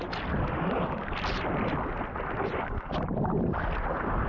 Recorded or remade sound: recorded